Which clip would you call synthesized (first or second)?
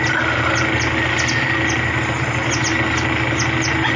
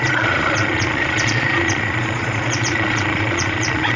second